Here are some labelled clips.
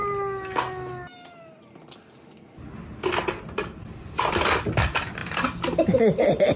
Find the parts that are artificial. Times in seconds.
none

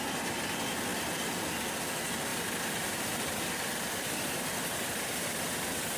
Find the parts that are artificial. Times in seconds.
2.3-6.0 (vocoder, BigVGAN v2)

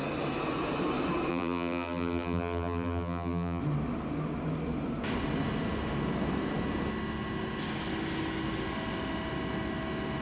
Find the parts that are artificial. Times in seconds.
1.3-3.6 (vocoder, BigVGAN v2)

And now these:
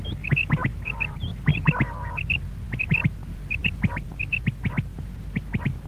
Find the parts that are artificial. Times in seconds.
0.4-2.4 (vocoder, BigVGAN v2); 3.3-4.2

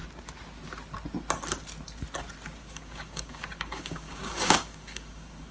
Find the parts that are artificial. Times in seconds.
2.6-5.5 (codec, DAC)

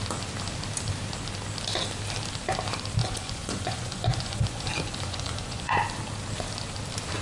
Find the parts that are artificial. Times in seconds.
3.0-5.7 (vocoder, Vocos)

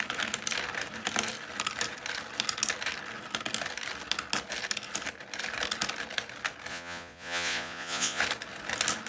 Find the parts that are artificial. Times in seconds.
6.7-8.2 (vocoder, Vocos)